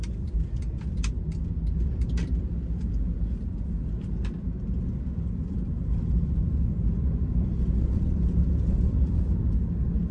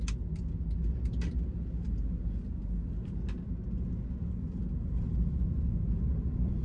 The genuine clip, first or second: second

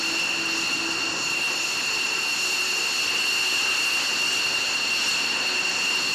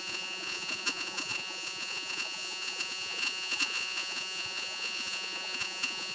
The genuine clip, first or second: first